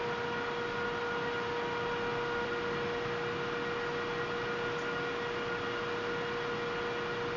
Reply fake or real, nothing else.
real